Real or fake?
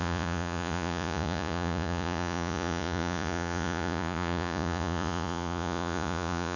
fake